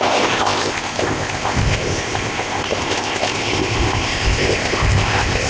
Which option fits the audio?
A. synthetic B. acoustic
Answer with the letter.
A